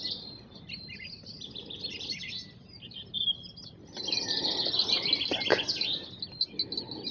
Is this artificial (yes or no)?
no